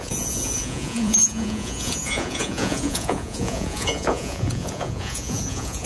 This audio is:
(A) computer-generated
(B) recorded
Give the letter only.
A